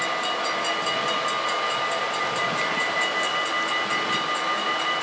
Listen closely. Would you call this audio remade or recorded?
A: recorded